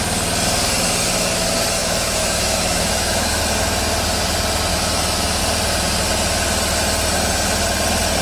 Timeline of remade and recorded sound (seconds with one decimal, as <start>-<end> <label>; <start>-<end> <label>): 0.0-1.8 recorded; 1.8-3.4 remade; 3.4-4.7 recorded; 4.7-5.4 remade; 5.4-8.2 recorded